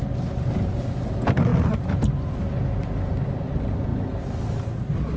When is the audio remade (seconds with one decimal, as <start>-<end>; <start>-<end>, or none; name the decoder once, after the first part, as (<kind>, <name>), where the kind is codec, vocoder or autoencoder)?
none